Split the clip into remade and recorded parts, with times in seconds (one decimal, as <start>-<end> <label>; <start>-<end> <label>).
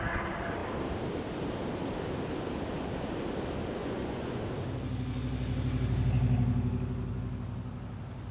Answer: 0.0-3.8 recorded; 3.8-4.4 remade; 4.4-8.3 recorded